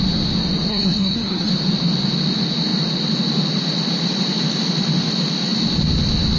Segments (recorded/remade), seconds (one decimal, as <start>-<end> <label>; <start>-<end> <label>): 0.0-0.7 recorded; 0.7-1.5 remade; 1.5-6.4 recorded